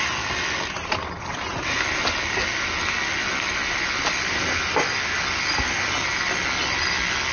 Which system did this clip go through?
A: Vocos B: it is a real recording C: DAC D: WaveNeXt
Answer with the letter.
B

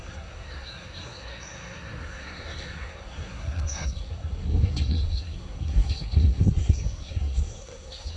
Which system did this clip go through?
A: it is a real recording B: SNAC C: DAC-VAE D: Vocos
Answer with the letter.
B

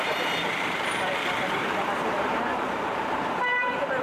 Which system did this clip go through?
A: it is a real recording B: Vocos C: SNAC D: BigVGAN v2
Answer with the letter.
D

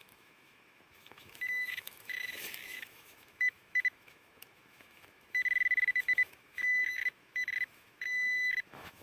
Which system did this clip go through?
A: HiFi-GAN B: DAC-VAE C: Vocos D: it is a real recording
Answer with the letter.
B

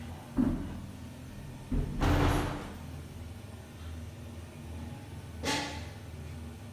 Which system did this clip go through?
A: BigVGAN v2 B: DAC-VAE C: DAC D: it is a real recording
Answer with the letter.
D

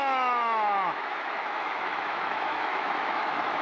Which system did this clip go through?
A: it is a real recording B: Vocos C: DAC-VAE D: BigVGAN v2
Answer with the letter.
C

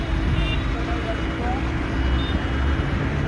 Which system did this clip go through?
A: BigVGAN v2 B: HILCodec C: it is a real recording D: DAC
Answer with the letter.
C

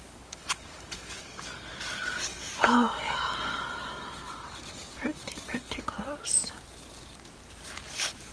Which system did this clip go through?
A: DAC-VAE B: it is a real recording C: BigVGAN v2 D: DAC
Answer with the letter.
D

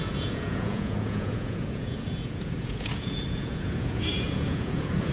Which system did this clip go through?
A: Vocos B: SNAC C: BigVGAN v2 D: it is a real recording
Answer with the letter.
A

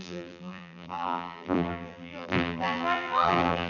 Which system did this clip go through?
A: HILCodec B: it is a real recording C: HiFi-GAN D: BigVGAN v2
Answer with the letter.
D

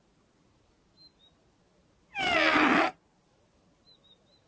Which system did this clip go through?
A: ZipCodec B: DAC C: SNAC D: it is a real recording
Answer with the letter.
D